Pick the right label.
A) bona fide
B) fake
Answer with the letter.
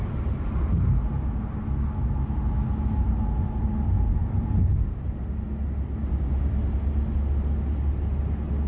A